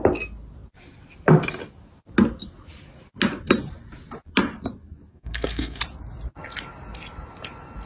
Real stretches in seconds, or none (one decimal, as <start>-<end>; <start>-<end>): 0.0-5.1; 5.8-7.9